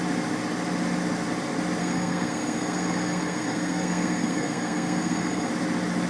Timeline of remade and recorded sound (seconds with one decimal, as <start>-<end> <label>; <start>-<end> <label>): 0.0-1.8 recorded; 1.8-5.5 remade; 5.5-6.1 recorded

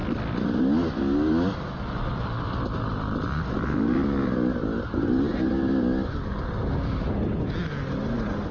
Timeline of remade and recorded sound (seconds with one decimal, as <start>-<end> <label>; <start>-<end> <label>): 0.0-8.5 recorded

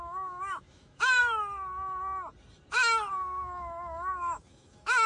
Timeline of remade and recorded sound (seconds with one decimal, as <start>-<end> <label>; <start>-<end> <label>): 0.0-1.2 remade; 1.2-3.1 recorded; 3.1-5.1 remade

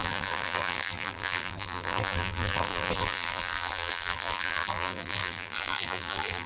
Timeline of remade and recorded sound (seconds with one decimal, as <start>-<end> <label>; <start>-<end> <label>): 0.0-6.5 remade